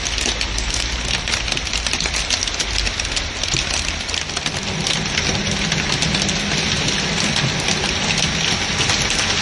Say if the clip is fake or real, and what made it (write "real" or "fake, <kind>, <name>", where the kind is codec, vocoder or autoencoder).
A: real